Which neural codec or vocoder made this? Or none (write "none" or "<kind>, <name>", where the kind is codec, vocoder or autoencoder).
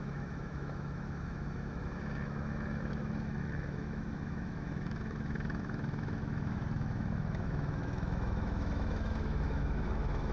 autoencoder, DAC-VAE